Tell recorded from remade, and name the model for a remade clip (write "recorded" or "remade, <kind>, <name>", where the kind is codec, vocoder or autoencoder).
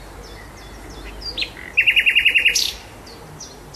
recorded